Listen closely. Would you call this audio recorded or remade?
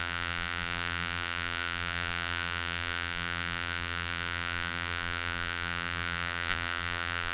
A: remade